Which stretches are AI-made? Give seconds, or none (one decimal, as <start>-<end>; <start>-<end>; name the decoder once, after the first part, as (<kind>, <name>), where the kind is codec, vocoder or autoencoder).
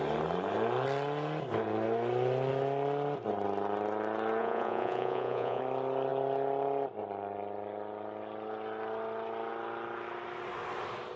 4.4-5.6 (vocoder, Vocos)